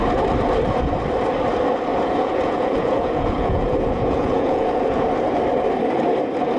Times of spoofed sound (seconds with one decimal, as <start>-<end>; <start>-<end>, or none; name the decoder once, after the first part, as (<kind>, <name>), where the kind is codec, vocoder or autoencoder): 1.9-5.1 (vocoder, Vocos)